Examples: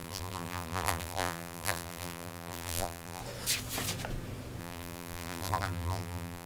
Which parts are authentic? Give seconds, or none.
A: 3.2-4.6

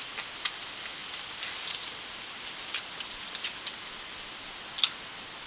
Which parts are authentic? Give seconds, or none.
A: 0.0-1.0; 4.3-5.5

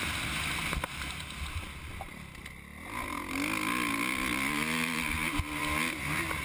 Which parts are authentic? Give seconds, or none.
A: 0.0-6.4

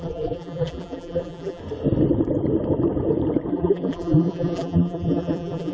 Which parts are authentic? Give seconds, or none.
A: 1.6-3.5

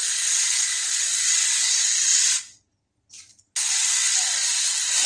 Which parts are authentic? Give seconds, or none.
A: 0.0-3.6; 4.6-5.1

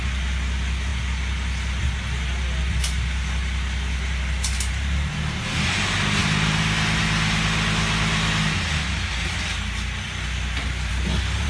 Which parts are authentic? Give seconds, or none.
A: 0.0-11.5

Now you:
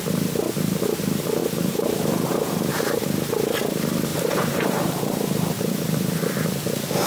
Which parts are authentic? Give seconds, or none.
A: 0.0-1.4; 3.0-4.1; 5.5-7.1

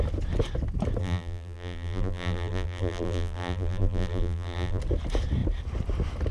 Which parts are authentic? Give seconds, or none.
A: 0.0-1.0; 4.8-6.3